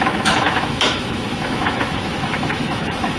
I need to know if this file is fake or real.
fake